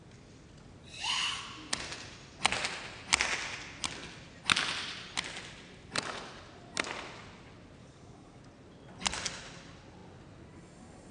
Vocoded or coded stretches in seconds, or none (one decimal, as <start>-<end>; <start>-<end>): 7.8-8.4